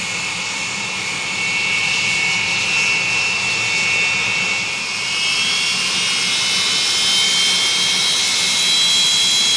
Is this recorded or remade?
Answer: recorded